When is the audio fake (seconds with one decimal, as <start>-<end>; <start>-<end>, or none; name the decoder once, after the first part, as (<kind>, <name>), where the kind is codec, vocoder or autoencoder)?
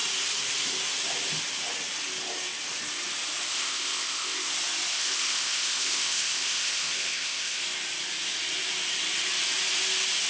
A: 3.5-4.5 (codec, ZipCodec); 4.9-7.6